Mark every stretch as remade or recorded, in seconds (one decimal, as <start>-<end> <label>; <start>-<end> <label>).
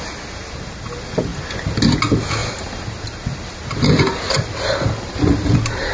0.0-2.4 recorded; 2.4-5.5 remade; 5.5-5.9 recorded